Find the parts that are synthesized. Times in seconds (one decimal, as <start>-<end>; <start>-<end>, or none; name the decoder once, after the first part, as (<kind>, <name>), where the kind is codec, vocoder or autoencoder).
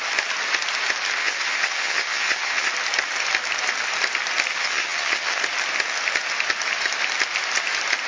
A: 1.2-2.7 (vocoder, HiFi-GAN); 4.5-5.4